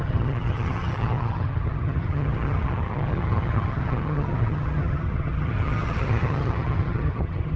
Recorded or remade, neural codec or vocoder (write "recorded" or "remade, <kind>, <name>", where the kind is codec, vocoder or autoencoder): remade, vocoder, HiFi-GAN